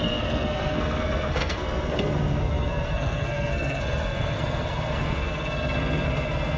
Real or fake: fake